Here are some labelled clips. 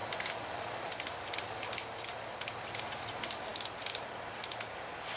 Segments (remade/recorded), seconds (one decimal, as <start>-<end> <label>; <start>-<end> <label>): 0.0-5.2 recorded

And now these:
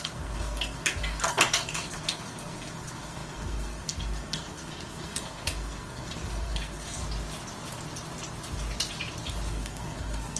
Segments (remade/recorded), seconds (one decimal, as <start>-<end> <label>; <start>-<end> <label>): 0.0-7.0 remade; 7.0-9.5 recorded; 9.5-10.4 remade

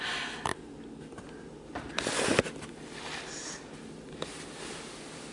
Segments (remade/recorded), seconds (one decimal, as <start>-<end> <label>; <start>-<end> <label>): 0.0-5.3 recorded

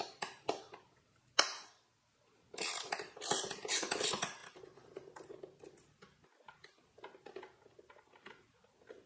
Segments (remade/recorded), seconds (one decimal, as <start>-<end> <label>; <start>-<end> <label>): 0.0-9.1 recorded

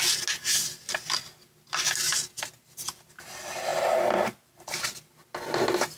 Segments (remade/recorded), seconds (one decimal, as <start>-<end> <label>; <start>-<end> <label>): 0.0-3.7 recorded; 3.7-4.8 remade; 4.8-6.0 recorded

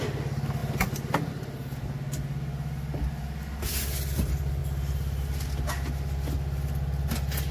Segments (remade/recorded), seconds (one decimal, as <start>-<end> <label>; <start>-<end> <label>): 0.0-0.6 recorded; 0.6-1.3 remade; 1.3-7.5 recorded

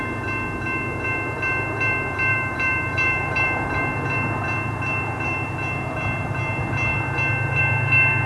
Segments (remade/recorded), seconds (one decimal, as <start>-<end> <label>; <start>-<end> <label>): 0.0-2.3 recorded; 2.3-3.8 remade; 3.8-8.3 recorded

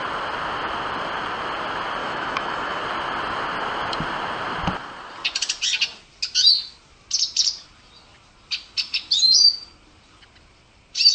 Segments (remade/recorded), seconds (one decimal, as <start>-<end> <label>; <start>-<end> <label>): 0.0-2.0 recorded; 2.0-2.8 remade; 2.8-11.1 recorded